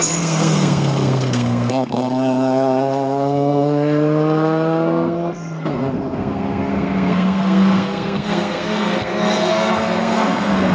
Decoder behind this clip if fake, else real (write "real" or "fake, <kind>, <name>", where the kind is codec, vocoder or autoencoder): fake, codec, SNAC